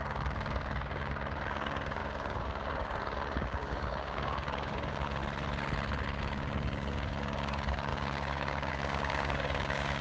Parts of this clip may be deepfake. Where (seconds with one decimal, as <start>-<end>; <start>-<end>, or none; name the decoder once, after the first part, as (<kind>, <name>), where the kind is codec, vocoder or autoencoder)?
0.0-5.2 (codec, DAC); 6.2-10.0